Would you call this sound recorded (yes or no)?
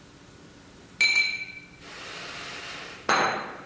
yes